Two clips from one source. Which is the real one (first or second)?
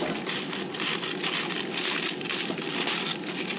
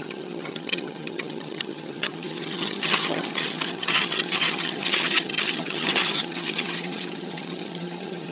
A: first